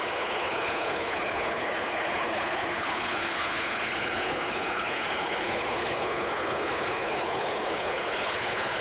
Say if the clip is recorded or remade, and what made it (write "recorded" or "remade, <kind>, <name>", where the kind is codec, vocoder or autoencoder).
remade, codec, HILCodec